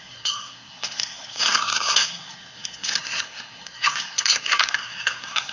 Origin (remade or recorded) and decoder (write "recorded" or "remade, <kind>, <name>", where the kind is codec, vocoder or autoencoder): remade, codec, SNAC